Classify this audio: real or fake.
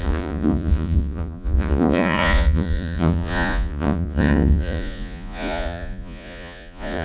fake